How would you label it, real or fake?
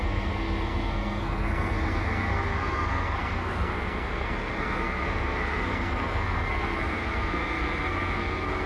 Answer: fake